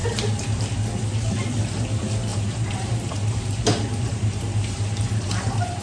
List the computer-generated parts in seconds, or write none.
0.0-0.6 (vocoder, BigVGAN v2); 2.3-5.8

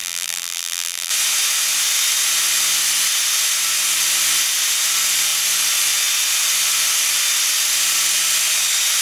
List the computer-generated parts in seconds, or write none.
0.0-1.1 (vocoder, BigVGAN v2)

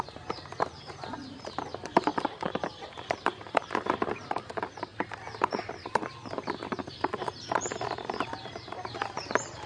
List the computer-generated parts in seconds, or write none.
0.0-2.1 (vocoder, BigVGAN v2); 2.7-4.9; 5.4-9.7

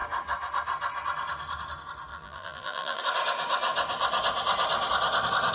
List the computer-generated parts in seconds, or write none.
2.1-3.0 (vocoder, BigVGAN v2)

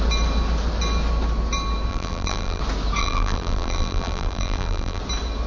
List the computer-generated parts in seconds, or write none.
1.9-2.6 (vocoder, BigVGAN v2); 3.0-5.0

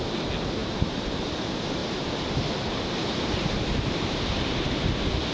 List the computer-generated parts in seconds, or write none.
0.6-1.3 (vocoder, BigVGAN v2); 1.8-4.2

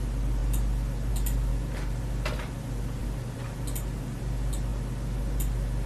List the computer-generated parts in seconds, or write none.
none